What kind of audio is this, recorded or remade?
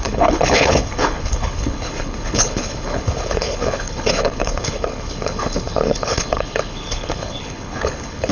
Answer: remade